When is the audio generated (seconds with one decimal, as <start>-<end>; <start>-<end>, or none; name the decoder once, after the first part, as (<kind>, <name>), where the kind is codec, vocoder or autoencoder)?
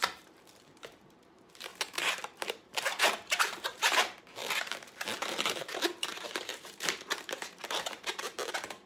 0.0-8.9 (vocoder, BigVGAN v2)